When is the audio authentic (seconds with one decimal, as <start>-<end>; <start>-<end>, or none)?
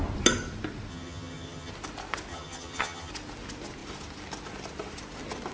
0.0-0.9; 1.7-2.3; 3.1-5.5